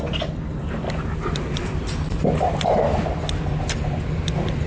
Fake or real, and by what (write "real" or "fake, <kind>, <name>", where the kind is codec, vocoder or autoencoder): real